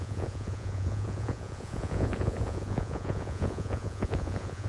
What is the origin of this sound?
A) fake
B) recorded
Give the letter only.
A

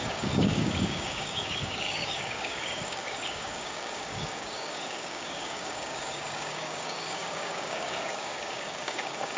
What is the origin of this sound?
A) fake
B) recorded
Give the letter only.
A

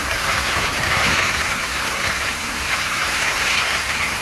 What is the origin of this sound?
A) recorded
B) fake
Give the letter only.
B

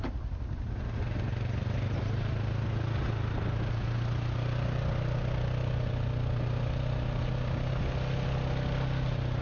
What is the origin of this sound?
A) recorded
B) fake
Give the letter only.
A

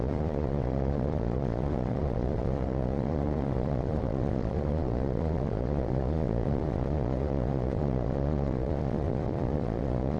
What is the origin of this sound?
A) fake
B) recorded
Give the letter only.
A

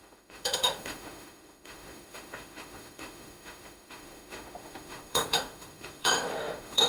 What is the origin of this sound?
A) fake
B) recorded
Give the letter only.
A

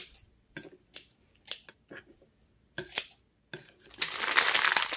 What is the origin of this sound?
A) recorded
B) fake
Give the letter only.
A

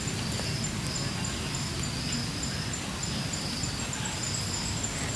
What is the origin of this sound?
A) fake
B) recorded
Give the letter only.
B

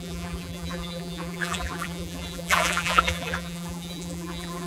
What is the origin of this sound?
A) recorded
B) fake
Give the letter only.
B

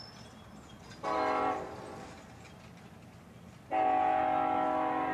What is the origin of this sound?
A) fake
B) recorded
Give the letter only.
B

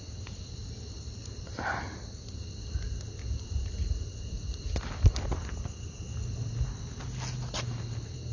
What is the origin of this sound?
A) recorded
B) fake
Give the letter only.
A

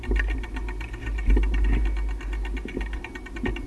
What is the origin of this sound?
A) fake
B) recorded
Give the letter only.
B